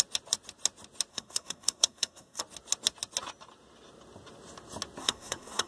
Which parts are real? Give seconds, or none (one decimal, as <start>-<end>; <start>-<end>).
0.0-1.1; 2.4-5.0